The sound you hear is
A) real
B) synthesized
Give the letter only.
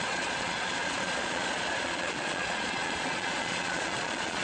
B